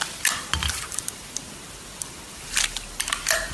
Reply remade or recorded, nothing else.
recorded